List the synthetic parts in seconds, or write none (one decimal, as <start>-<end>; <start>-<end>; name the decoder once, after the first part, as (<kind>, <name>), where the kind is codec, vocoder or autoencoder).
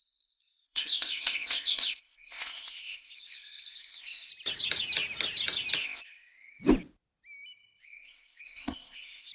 0.0-4.3 (codec, ZipCodec); 5.8-6.6; 7.8-9.3